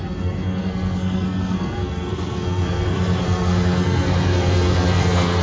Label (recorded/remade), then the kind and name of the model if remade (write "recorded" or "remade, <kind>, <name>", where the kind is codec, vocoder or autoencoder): remade, codec, SNAC